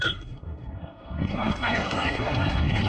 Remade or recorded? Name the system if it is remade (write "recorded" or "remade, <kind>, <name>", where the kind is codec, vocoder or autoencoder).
remade, codec, SNAC